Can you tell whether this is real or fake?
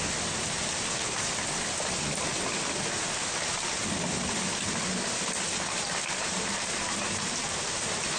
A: real